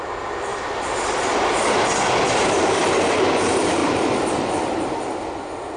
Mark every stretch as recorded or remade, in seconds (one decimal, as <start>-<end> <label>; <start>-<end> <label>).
0.0-5.8 recorded